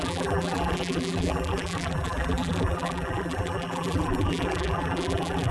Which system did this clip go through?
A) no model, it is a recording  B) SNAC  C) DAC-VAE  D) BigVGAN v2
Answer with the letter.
D